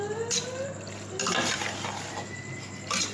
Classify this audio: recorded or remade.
recorded